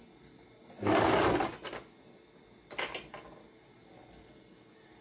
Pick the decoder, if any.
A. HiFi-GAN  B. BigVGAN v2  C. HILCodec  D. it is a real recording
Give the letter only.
D